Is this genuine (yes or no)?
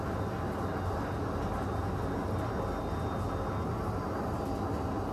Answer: yes